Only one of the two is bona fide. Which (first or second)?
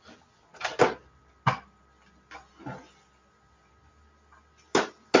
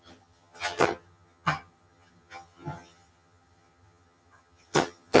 first